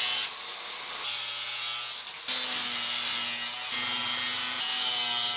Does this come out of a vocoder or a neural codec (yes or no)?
no